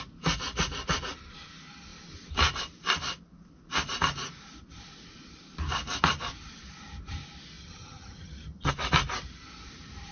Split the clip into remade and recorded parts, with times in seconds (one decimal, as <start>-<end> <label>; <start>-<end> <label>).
0.0-7.6 recorded; 7.6-8.7 remade; 8.7-10.1 recorded